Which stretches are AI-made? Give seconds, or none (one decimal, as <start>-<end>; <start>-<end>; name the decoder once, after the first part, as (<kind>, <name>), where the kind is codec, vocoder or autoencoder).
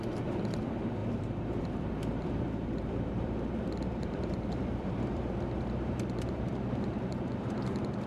0.0-8.1 (vocoder, BigVGAN v2)